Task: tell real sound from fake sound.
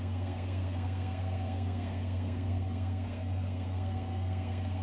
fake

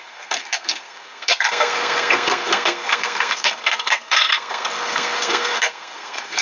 fake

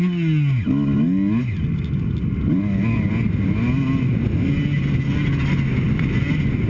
real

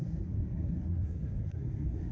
fake